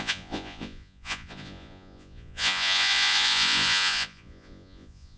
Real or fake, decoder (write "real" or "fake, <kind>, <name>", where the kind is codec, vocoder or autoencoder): fake, vocoder, Vocos